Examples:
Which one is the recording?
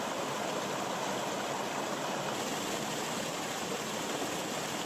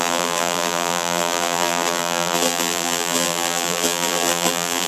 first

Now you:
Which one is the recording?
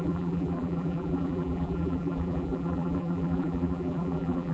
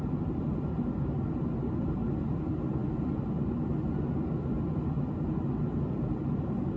second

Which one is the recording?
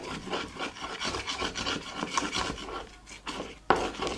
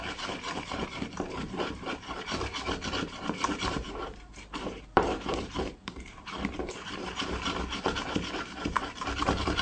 first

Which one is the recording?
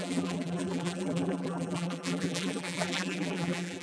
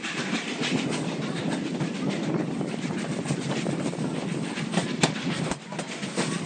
second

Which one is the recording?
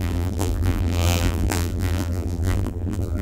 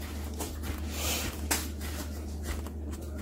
second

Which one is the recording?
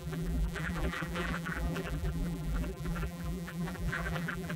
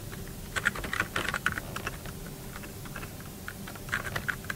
second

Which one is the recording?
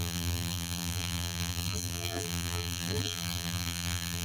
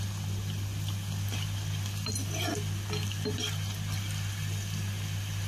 second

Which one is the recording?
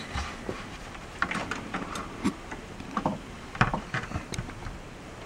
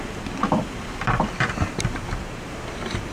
second